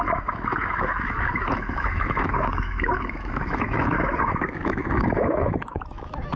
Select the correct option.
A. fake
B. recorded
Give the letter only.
A